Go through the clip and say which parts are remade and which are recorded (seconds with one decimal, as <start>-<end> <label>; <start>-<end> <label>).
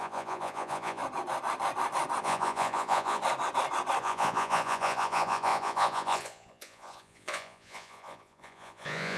0.0-1.0 remade; 1.0-2.2 recorded; 2.2-3.2 remade; 3.2-4.0 recorded; 4.0-9.2 remade